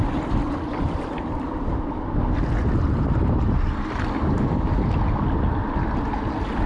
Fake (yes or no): no